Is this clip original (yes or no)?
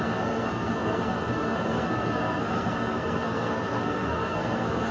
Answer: no